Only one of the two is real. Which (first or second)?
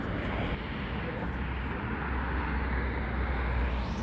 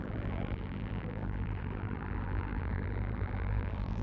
first